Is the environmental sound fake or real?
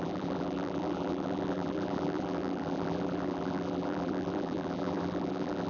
fake